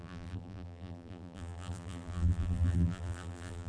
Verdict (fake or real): fake